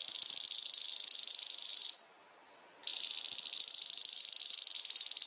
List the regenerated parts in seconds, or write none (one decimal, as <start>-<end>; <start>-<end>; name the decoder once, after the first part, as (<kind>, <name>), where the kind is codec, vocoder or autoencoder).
none